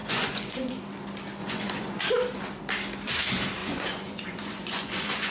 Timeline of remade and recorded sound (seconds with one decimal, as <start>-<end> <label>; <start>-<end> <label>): 0.0-0.7 remade; 0.7-1.4 recorded; 1.4-2.0 remade; 2.0-3.6 recorded; 3.6-5.3 remade